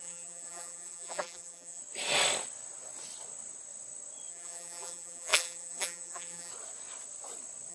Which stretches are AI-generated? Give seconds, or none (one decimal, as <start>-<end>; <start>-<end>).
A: 0.0-1.8; 4.3-6.5